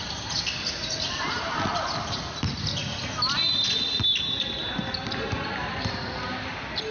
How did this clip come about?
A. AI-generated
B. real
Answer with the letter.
B